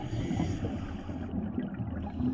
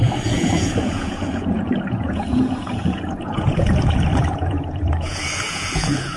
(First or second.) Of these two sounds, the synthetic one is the second